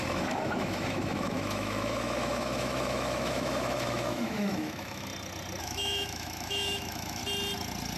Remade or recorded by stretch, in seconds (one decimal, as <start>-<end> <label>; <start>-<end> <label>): 0.0-5.1 remade; 5.1-5.6 recorded; 5.6-7.2 remade; 7.2-8.0 recorded